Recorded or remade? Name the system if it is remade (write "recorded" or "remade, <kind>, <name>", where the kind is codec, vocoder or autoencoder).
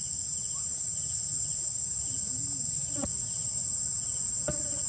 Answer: recorded